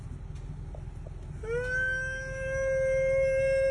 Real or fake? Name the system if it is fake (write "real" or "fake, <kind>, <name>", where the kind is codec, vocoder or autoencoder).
real